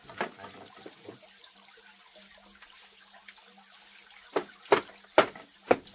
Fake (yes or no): no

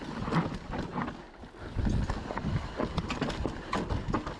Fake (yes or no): no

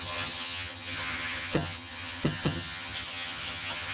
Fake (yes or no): yes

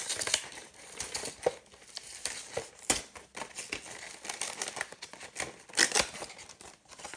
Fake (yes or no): no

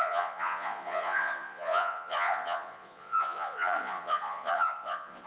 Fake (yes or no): yes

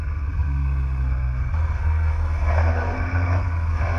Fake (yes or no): yes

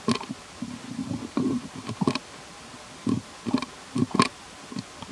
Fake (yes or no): no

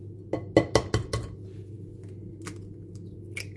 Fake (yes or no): no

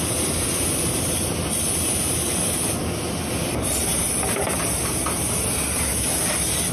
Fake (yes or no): no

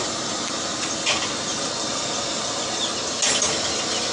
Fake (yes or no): no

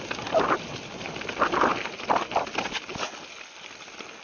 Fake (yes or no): no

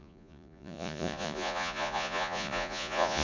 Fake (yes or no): yes